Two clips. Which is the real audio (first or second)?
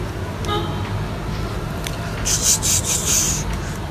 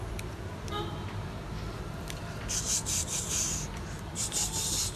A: first